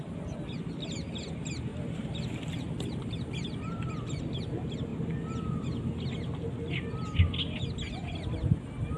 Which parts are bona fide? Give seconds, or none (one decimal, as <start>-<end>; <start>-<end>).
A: 0.0-1.7; 4.2-9.0